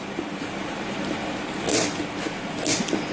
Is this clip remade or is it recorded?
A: recorded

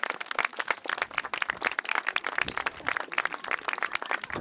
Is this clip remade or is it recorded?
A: recorded